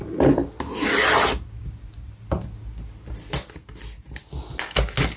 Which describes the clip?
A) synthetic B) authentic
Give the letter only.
B